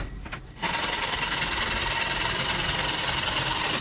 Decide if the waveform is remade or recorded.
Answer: recorded